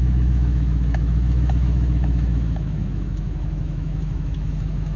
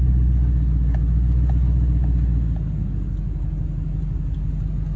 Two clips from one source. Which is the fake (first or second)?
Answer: first